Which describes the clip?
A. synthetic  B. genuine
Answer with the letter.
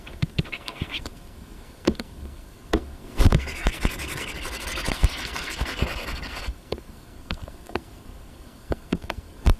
A